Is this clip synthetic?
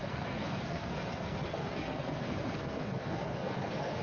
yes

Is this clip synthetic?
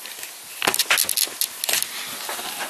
no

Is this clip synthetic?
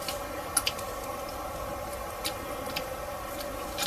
no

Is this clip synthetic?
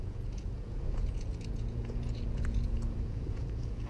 yes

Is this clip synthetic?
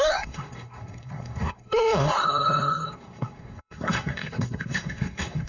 yes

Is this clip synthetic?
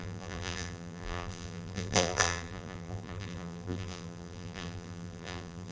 yes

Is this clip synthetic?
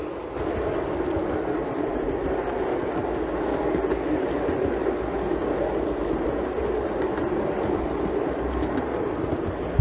no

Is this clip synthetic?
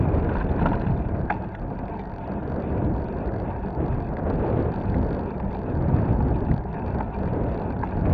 no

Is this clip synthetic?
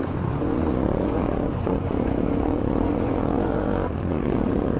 yes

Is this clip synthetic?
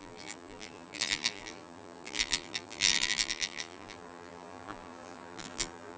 yes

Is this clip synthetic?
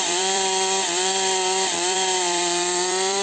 yes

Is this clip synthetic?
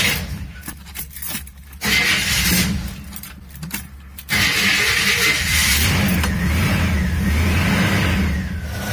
no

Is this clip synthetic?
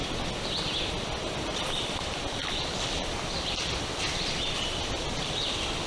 no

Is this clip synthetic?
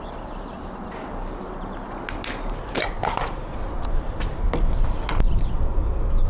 no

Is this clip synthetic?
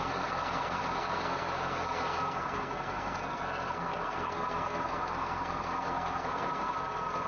yes